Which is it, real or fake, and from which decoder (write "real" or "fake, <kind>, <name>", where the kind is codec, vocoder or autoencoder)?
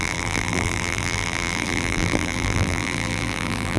fake, vocoder, BigVGAN v2